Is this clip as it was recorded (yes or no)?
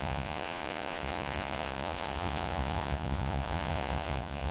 no